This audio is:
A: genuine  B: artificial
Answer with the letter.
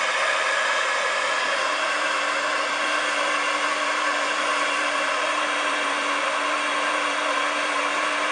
B